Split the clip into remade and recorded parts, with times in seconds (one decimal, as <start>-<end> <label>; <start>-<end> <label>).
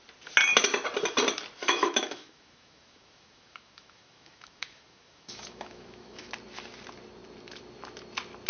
0.0-1.6 recorded; 1.6-6.3 remade; 6.3-8.5 recorded